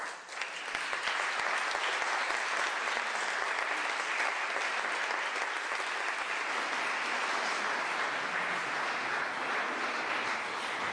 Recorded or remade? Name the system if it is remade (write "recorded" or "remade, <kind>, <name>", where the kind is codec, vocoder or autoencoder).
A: recorded